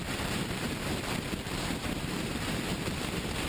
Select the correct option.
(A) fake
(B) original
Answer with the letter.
A